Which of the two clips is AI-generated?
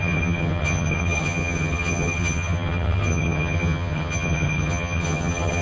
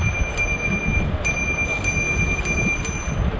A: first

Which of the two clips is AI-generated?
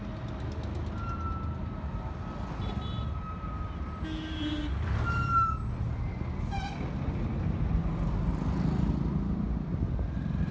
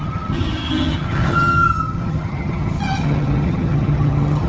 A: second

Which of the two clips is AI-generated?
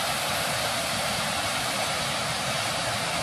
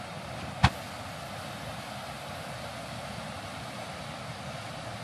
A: first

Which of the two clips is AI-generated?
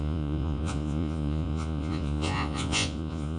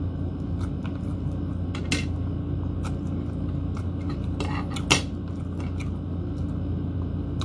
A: first